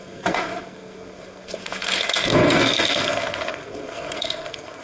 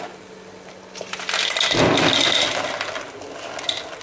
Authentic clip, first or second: second